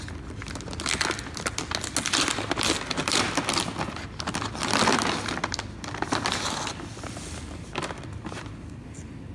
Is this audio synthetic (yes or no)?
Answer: no